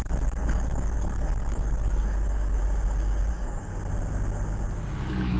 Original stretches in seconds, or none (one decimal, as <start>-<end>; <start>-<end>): 2.6-3.3; 3.7-5.0